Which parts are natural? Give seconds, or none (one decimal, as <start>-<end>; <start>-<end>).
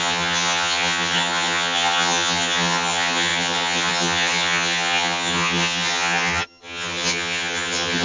none